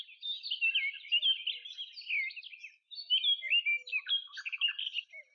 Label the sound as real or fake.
real